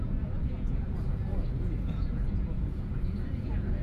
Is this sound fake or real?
fake